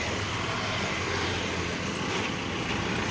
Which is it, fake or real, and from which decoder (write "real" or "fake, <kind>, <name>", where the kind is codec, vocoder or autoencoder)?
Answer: real